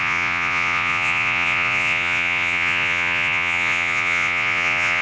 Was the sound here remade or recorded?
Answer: remade